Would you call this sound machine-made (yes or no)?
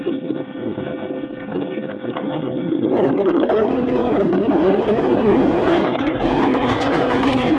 yes